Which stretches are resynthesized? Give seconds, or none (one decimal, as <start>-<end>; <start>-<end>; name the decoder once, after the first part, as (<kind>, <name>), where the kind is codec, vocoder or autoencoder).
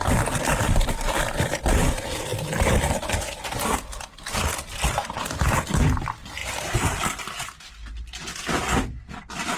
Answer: none